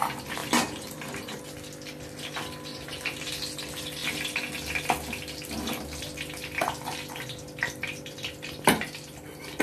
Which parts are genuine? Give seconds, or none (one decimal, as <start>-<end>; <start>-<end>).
0.0-0.4; 1.4-2.7; 3.4-9.6